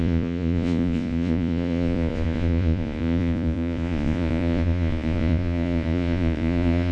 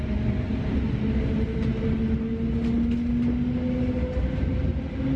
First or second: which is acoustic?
second